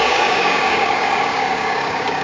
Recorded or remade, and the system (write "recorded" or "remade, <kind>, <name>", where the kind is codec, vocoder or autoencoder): remade, codec, DAC